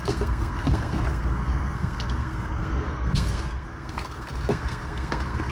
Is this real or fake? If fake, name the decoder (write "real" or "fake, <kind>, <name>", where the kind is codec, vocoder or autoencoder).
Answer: fake, codec, SNAC